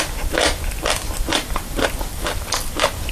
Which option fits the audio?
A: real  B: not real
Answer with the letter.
B